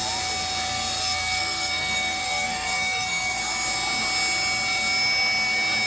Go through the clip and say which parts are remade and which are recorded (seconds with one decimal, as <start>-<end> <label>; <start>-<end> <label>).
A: 0.0-1.0 recorded; 1.0-3.4 remade; 3.4-5.9 recorded